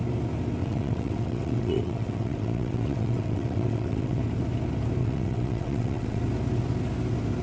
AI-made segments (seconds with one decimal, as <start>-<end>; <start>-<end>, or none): 0.6-4.2; 5.0-6.2